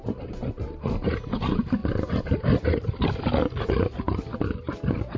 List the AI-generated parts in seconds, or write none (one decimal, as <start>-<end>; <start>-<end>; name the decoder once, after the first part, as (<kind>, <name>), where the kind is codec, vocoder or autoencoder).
none